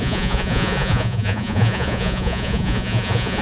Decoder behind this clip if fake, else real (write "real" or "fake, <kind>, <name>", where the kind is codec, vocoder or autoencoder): fake, vocoder, Vocos